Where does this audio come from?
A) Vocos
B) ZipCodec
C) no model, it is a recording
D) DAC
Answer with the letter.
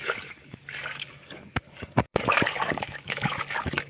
D